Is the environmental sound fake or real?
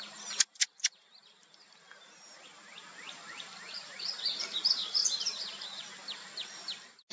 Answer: real